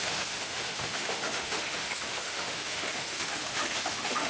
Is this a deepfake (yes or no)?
yes